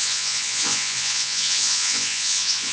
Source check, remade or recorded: remade